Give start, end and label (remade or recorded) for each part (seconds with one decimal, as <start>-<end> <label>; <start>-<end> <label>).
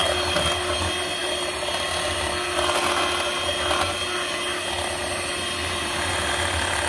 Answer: 0.0-1.2 recorded; 1.2-1.7 remade; 1.7-5.6 recorded; 5.6-6.3 remade; 6.3-6.9 recorded